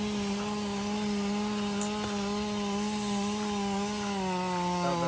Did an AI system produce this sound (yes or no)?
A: no